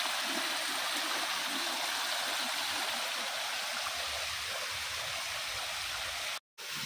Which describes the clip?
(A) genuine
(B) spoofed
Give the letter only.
A